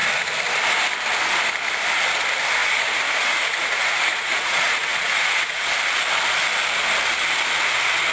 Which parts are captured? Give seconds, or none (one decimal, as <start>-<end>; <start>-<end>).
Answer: 0.0-2.6; 5.7-8.1